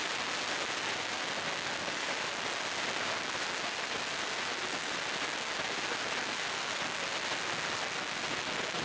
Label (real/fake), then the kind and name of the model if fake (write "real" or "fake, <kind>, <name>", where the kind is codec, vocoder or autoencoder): real